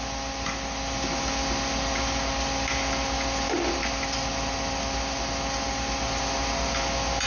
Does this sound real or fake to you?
real